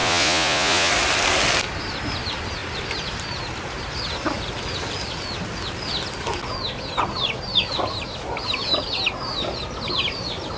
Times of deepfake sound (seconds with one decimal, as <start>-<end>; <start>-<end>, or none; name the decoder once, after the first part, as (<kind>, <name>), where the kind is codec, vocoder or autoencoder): 0.0-0.9 (vocoder, Vocos)